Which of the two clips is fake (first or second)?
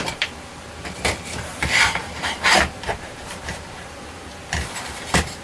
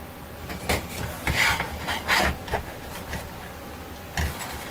first